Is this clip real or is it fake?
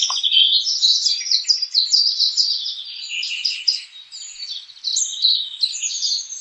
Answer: real